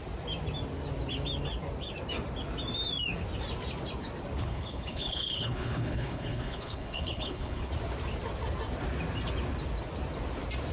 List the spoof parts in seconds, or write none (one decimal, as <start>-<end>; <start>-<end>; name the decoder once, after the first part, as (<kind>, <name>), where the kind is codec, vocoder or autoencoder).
4.4-7.7 (codec, HILCodec)